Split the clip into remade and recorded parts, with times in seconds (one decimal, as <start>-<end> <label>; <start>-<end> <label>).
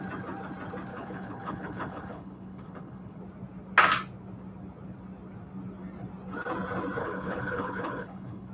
0.0-0.9 recorded; 0.9-3.2 remade; 3.2-7.0 recorded; 7.0-8.5 remade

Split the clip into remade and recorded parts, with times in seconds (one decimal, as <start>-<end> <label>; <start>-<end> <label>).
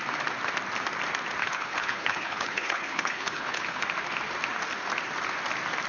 0.0-1.4 recorded; 1.4-3.8 remade; 3.8-5.9 recorded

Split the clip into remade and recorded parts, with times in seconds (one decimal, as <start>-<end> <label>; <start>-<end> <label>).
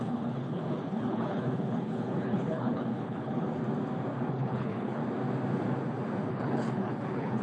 0.0-3.6 remade; 3.6-4.3 recorded; 4.3-5.0 remade; 5.0-6.3 recorded; 6.3-7.4 remade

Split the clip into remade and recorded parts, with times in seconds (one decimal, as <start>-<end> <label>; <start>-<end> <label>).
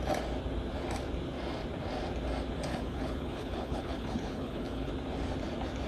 0.0-2.7 recorded; 2.7-4.9 remade; 4.9-5.9 recorded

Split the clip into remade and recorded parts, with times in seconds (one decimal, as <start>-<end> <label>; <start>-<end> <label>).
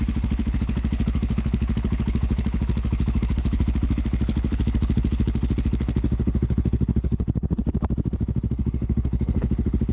0.0-7.6 remade; 7.6-8.6 recorded; 8.6-9.9 remade